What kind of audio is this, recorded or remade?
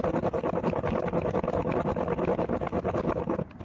recorded